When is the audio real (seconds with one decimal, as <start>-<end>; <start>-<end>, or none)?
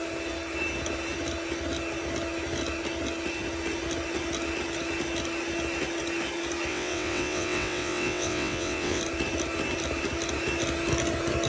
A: 0.0-6.7; 9.0-11.5